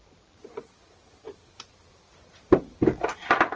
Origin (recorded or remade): recorded